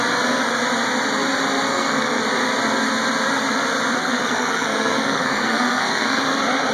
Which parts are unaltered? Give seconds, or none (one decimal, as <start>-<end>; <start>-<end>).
0.0-1.7; 2.2-4.0; 6.2-6.7